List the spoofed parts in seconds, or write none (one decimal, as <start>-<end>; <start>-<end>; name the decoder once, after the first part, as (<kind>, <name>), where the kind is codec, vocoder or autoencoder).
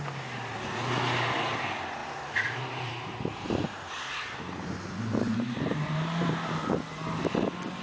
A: 2.0-6.3 (vocoder, BigVGAN v2)